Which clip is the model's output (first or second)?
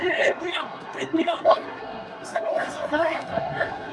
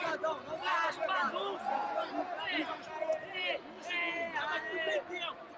first